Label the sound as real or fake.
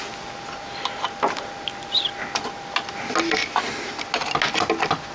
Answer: real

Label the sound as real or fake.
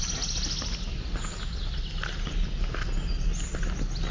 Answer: real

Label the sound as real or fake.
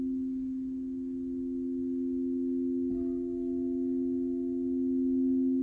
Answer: real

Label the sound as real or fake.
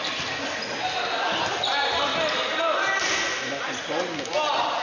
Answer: real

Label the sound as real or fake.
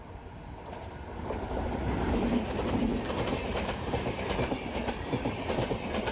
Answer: fake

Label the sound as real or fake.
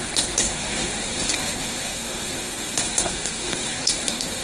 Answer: fake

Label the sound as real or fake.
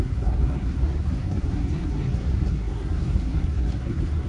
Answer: fake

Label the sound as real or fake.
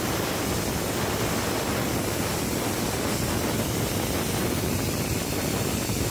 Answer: real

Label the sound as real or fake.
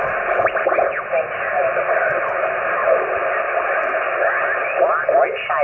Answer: real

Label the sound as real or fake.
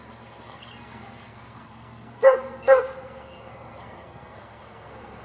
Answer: fake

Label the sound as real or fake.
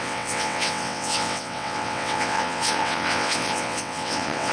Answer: fake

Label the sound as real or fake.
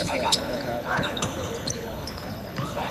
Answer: fake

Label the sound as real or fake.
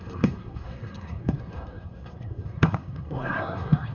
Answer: fake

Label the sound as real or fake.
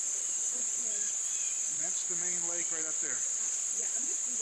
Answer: fake